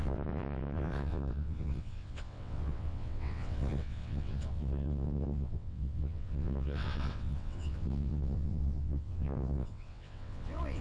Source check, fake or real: fake